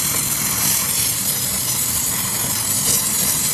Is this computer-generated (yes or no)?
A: yes